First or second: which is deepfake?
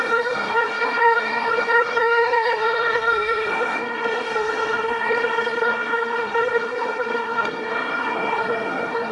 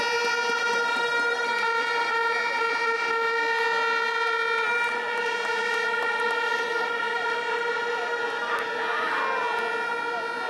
first